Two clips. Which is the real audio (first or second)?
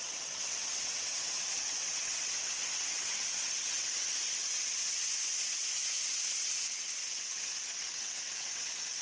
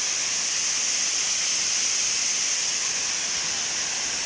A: second